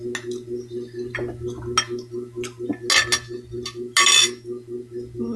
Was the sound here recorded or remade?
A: recorded